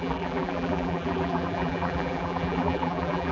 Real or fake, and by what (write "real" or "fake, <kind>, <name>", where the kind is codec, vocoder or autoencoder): fake, vocoder, BigVGAN v2